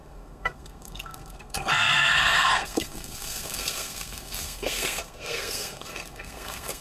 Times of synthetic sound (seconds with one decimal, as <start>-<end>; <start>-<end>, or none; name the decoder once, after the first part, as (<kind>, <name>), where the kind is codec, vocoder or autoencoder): 0.0-6.8 (codec, SNAC)